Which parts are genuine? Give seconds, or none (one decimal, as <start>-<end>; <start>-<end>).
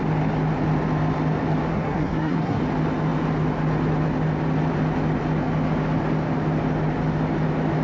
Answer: 0.0-1.7; 2.6-7.8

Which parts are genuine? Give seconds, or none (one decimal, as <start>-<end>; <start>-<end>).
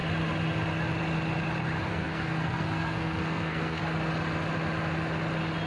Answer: 0.0-1.9; 3.8-5.7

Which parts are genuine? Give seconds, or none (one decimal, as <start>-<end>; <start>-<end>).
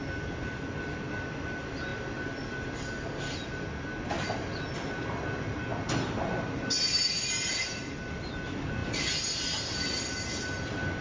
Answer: 0.0-11.0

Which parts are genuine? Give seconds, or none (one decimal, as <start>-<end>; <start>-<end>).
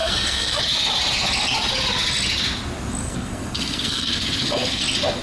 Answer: 0.6-3.0; 4.8-5.2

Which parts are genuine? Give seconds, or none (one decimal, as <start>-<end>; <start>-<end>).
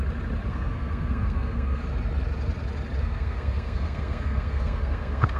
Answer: 0.0-0.5; 1.8-3.0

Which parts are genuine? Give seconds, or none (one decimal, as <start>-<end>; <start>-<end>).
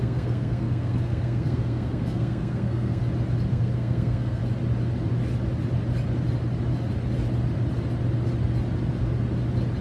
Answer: 3.0-3.5; 4.4-9.8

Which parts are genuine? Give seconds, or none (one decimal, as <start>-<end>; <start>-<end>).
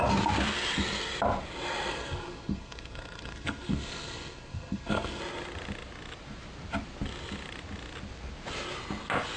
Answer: 0.0-1.9; 5.2-9.4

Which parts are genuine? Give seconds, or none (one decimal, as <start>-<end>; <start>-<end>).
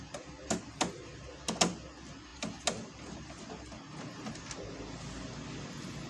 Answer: 0.0-6.1